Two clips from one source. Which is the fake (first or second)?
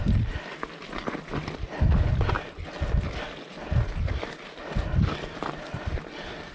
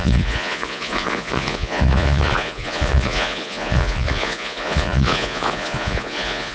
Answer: second